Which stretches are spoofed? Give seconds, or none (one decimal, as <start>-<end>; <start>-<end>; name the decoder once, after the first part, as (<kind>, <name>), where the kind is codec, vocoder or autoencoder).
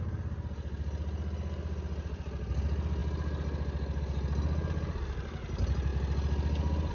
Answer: none